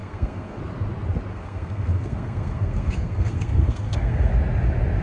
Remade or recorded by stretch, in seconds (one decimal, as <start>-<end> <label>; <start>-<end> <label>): 0.0-0.6 remade; 0.6-1.3 recorded; 1.3-4.3 remade; 4.3-5.0 recorded